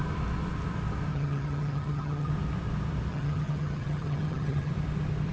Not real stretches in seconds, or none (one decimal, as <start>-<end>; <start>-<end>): 1.1-2.3; 3.1-4.7